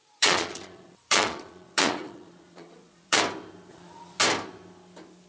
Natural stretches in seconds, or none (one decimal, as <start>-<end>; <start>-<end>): 3.2-3.7; 4.2-5.3